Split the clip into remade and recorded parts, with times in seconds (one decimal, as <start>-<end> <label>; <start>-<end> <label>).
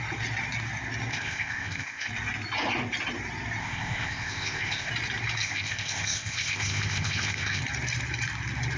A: 0.0-1.1 recorded; 1.1-2.1 remade; 2.1-3.6 recorded; 3.6-4.9 remade; 4.9-5.4 recorded; 5.4-7.6 remade; 7.6-8.8 recorded